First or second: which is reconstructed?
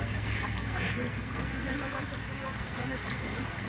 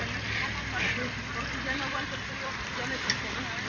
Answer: first